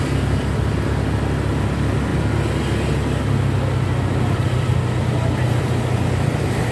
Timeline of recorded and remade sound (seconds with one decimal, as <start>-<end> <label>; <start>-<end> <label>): 0.0-6.7 recorded